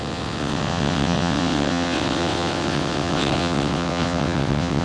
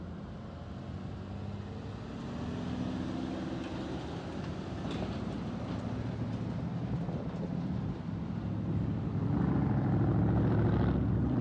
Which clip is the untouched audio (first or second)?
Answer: second